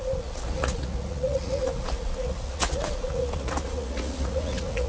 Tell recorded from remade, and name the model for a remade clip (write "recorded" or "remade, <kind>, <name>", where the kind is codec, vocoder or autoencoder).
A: remade, vocoder, Vocos